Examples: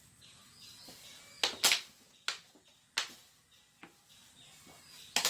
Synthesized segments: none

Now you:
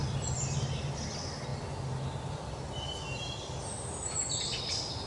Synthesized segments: none

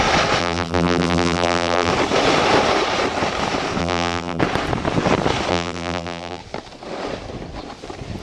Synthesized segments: 0.4-1.9 (vocoder, BigVGAN v2); 3.8-4.4; 5.5-6.4

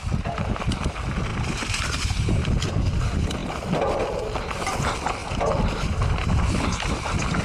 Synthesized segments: none

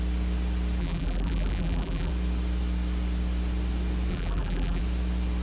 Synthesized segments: 0.8-2.1 (vocoder, BigVGAN v2); 4.1-4.8

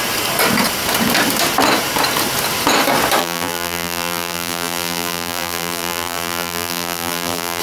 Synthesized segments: 3.2-7.6 (vocoder, BigVGAN v2)